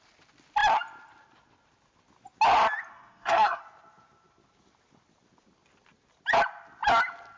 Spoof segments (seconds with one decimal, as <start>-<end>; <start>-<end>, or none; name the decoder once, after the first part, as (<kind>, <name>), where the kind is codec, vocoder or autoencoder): 2.9-3.6 (codec, SNAC)